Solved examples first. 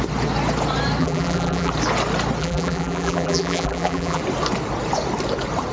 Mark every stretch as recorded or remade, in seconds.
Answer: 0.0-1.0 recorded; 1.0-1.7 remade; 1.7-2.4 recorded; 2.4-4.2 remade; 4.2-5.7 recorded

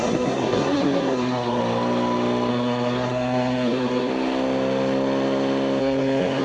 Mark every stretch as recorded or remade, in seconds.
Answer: 0.0-1.6 remade; 1.6-2.5 recorded; 2.5-4.1 remade; 4.1-5.8 recorded; 5.8-6.4 remade

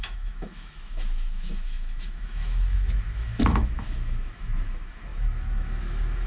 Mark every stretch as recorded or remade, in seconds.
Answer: 0.0-6.3 remade

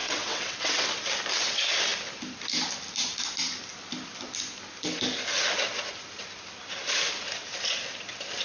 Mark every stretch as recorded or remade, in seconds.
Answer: 0.0-0.8 remade; 0.8-8.4 recorded